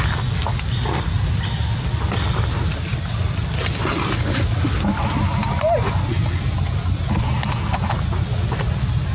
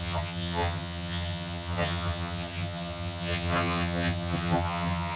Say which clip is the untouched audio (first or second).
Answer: first